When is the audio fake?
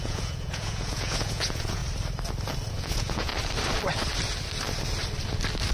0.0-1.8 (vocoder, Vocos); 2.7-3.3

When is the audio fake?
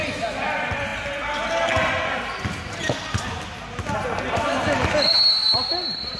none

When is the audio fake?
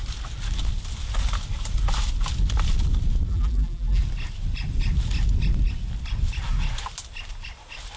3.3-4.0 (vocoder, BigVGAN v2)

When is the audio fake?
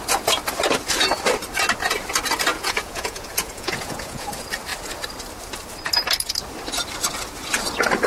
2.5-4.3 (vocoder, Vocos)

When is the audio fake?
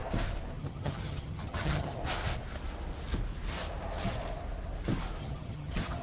0.6-2.0 (vocoder, HiFi-GAN); 5.2-6.0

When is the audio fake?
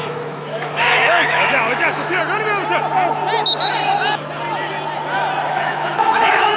0.0-2.2 (autoencoder, DAC-VAE); 5.5-6.6